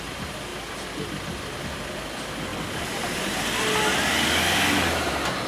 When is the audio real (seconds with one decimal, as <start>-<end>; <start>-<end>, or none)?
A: 0.0-5.5